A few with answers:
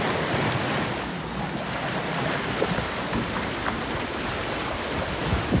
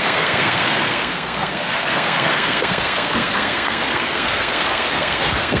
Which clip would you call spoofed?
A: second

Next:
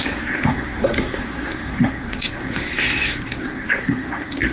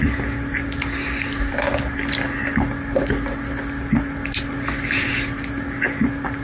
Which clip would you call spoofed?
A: first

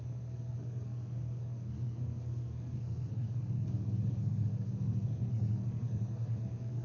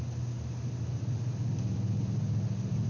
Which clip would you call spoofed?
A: first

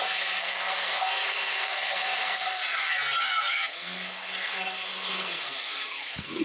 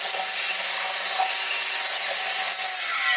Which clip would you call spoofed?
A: first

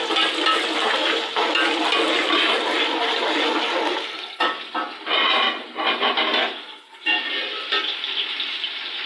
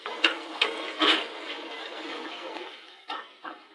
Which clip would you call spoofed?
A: second